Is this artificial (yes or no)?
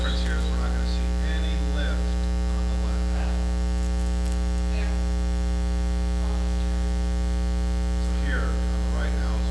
no